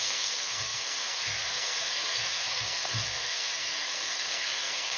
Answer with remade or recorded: remade